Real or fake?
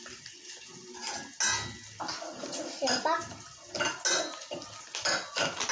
real